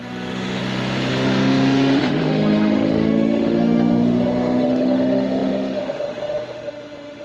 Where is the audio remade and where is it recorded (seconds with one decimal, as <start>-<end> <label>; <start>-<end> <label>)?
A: 0.0-0.6 remade; 0.6-1.1 recorded; 1.1-7.2 remade